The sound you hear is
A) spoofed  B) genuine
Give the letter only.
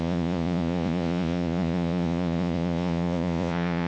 A